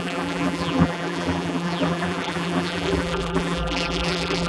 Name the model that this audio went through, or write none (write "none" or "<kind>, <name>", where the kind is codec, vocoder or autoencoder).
vocoder, BigVGAN v2